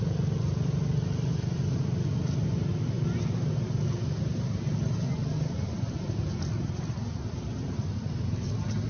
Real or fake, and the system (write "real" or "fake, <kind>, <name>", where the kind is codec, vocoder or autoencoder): real